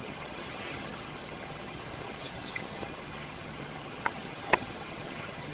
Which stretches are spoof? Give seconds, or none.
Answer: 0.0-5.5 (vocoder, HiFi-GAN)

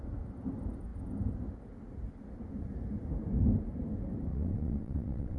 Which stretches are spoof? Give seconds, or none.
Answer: 4.3-5.4 (vocoder, WaveNeXt)

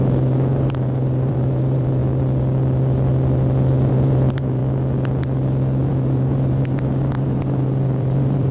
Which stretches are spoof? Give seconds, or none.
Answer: 0.0-2.0 (vocoder, BigVGAN v2); 3.9-4.6; 5.9-8.5

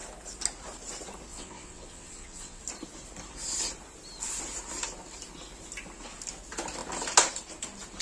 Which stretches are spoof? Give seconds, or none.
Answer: 1.3-2.6 (vocoder, WaveNeXt)

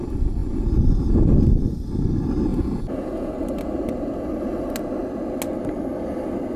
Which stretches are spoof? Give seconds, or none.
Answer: 2.5-3.3 (vocoder, Vocos)

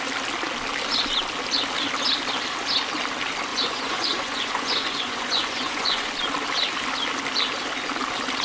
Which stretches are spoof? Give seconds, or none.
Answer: 3.5-6.1 (vocoder, Vocos)